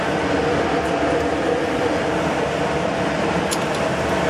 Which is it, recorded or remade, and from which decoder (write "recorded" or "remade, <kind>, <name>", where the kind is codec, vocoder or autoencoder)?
remade, vocoder, BigVGAN v2